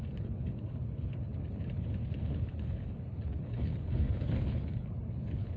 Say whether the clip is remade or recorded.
remade